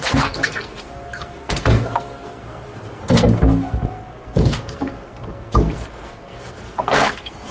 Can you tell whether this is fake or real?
fake